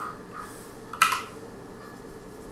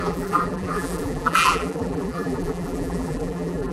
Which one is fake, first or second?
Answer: second